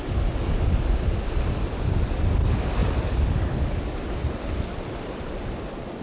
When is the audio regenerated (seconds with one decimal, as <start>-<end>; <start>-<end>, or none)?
none